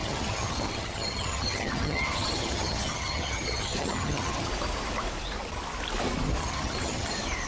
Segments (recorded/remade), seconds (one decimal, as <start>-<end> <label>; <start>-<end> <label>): 0.0-4.5 remade; 4.5-6.4 recorded; 6.4-7.1 remade; 7.1-7.5 recorded